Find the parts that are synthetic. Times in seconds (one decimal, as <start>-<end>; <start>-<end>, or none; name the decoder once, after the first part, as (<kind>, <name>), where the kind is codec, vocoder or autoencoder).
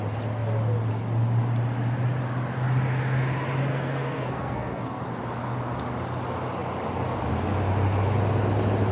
3.7-5.0 (codec, SNAC)